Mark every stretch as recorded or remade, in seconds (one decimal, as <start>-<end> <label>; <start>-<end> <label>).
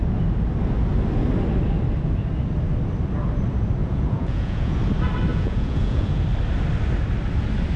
0.0-3.8 recorded; 3.8-4.8 remade; 4.8-5.3 recorded; 5.3-6.2 remade; 6.2-7.8 recorded